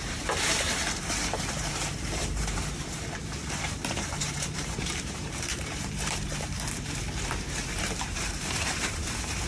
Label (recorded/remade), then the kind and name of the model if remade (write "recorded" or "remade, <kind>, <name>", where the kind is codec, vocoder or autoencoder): remade, vocoder, BigVGAN v2